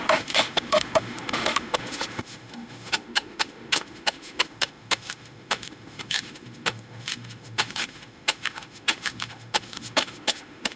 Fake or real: fake